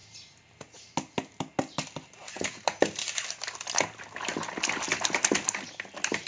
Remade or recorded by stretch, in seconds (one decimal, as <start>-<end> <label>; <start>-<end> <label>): 0.0-6.3 recorded